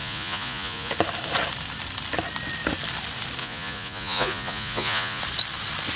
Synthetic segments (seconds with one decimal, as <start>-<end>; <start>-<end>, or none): 0.0-0.9; 3.4-5.2